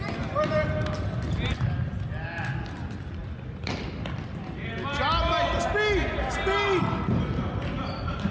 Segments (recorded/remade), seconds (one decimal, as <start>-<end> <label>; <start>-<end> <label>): 0.0-8.3 recorded